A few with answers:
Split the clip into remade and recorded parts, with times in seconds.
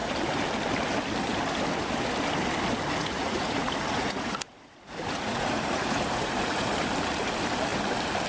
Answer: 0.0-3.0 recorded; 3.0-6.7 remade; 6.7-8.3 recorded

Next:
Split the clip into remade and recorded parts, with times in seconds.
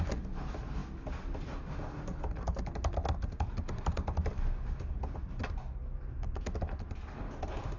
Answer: 0.0-7.8 recorded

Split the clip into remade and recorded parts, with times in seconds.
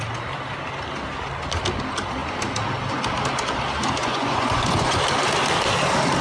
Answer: 0.0-4.0 recorded; 4.0-5.0 remade; 5.0-6.2 recorded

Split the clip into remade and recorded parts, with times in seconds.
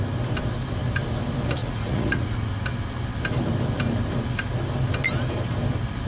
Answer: 0.0-1.6 recorded; 1.6-2.5 remade; 2.5-6.1 recorded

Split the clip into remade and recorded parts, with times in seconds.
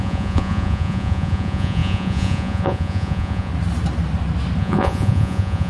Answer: 0.0-3.5 remade; 3.5-4.6 recorded; 4.6-5.7 remade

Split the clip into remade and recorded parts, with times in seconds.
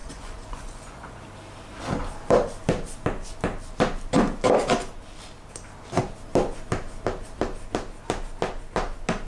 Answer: 0.0-1.2 remade; 1.2-9.3 recorded